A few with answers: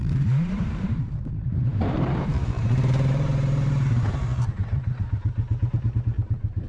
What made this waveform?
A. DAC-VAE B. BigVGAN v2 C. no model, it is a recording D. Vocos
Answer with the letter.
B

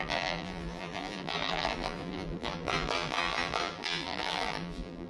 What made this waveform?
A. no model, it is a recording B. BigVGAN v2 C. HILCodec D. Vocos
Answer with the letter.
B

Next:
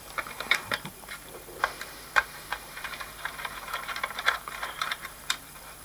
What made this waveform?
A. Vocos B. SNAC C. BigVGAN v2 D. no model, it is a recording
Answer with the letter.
C